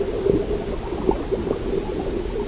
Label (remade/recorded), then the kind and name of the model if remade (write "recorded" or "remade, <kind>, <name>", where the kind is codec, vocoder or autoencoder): recorded